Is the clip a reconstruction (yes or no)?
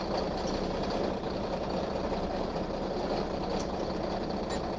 no